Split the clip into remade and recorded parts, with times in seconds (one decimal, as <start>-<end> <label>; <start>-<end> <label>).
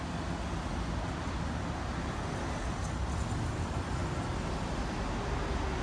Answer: 0.0-5.8 recorded